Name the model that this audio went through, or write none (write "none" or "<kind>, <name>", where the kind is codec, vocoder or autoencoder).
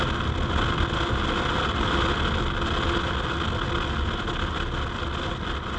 none